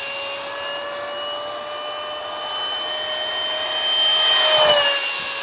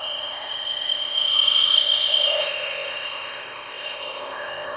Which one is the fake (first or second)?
second